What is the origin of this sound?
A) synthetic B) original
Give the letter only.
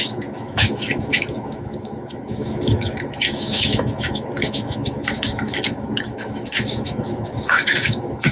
A